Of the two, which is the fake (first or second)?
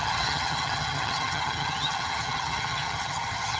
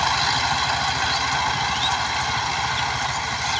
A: first